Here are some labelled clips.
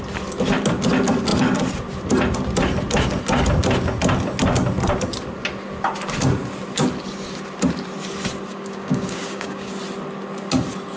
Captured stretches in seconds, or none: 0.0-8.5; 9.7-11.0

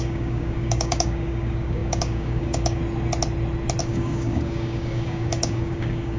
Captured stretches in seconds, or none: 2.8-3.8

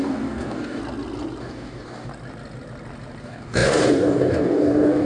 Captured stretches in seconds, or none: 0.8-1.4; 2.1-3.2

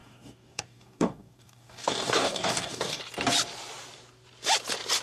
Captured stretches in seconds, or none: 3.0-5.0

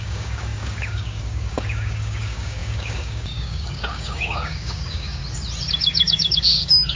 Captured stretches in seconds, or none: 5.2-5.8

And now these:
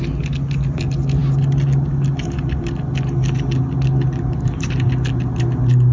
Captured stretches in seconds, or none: 0.0-5.9